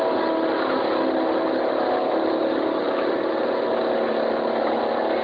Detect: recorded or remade recorded